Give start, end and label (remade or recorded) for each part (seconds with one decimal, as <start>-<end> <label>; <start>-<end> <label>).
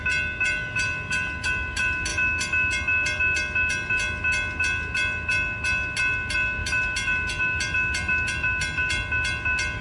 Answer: 0.0-9.8 recorded